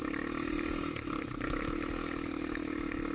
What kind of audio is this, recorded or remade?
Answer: recorded